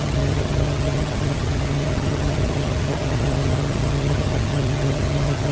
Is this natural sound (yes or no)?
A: no